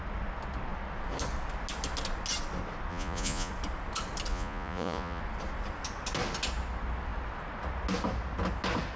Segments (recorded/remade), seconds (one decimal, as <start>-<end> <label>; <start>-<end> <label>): 0.0-2.9 recorded; 2.9-3.5 remade; 3.5-4.3 recorded; 4.3-5.2 remade; 5.2-9.0 recorded